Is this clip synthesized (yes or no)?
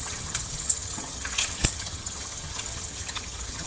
yes